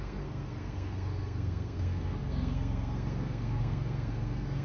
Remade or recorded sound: remade